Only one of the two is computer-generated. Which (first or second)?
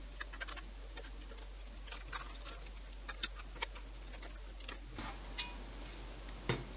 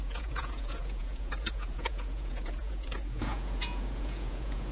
second